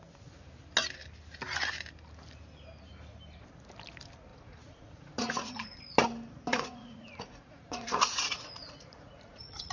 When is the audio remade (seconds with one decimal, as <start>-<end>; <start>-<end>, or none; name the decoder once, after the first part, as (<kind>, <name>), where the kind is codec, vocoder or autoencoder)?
4.3-5.8 (vocoder, Vocos); 6.5-9.7